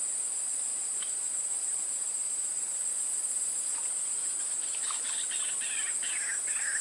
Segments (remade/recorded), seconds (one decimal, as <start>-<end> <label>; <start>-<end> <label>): 0.0-0.7 recorded; 0.7-2.1 remade; 2.1-6.8 recorded